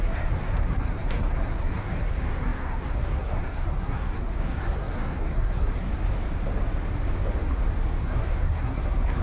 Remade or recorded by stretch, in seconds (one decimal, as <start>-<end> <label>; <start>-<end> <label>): 0.0-5.9 remade; 5.9-8.0 recorded; 8.0-9.2 remade